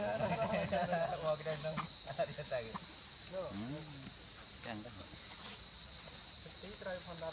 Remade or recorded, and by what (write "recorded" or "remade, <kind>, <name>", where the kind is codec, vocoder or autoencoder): recorded